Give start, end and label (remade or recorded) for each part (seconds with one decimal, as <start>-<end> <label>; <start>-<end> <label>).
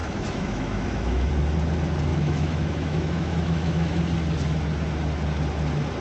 0.0-1.3 remade; 1.3-2.1 recorded; 2.1-4.0 remade; 4.0-6.0 recorded